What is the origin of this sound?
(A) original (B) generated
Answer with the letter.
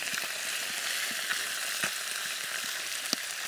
A